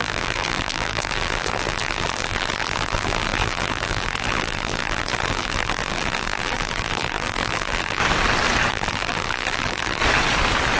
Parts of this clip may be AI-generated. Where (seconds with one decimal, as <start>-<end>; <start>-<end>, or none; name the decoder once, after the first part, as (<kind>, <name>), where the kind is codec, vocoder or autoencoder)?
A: 0.0-8.0 (vocoder, BigVGAN v2); 8.7-10.0